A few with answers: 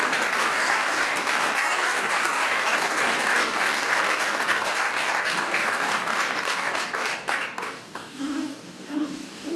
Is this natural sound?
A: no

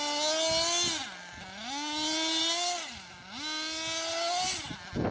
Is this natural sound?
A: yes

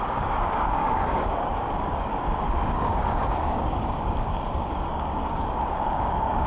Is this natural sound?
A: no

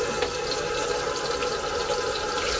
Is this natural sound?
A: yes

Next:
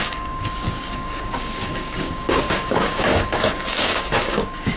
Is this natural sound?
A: no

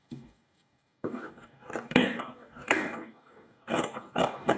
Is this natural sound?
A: no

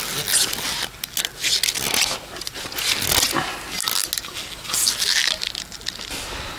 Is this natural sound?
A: yes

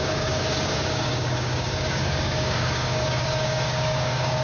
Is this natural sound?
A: no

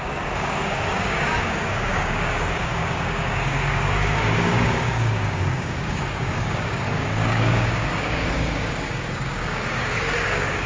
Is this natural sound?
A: no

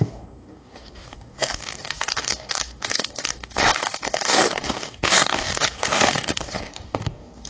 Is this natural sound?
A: no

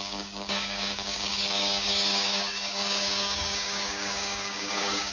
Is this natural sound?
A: no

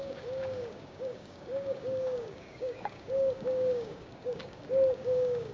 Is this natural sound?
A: no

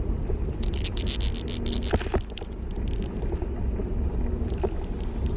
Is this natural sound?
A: yes